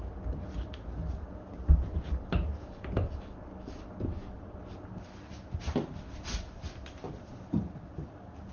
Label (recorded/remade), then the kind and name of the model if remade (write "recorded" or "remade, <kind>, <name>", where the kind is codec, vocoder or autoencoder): recorded